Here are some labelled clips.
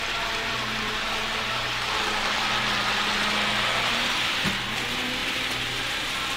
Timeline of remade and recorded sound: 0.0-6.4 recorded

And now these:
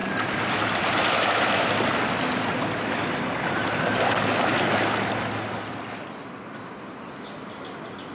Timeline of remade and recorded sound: 0.0-8.1 recorded